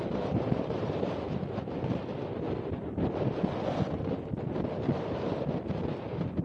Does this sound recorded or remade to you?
recorded